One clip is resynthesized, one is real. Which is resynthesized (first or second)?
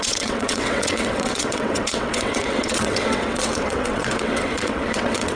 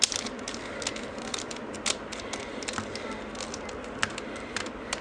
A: first